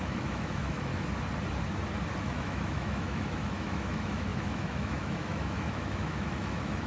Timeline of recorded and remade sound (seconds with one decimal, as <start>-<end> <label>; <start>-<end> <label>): 0.0-0.9 remade; 0.9-2.2 recorded; 2.2-6.9 remade